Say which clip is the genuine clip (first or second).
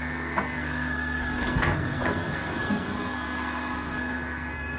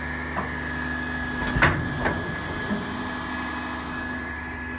second